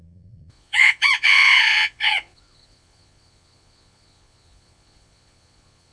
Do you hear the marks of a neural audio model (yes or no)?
yes